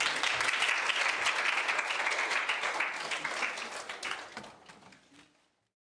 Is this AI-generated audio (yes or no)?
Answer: no